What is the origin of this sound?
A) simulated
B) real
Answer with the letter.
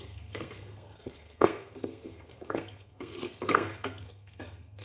A